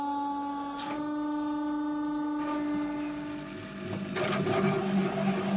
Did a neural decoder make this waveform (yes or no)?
no